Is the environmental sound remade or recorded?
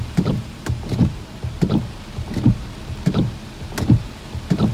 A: recorded